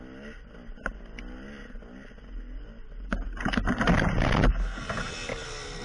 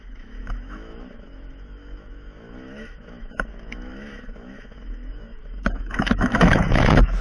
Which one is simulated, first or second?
second